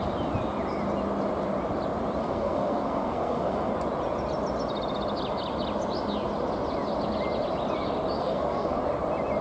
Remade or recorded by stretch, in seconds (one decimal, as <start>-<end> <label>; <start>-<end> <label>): 0.0-2.2 recorded; 2.2-3.7 remade; 3.7-8.2 recorded; 8.2-8.8 remade; 8.8-9.4 recorded